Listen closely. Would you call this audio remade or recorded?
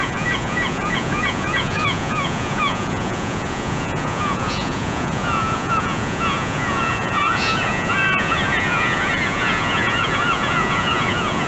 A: remade